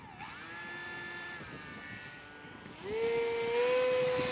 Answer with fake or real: real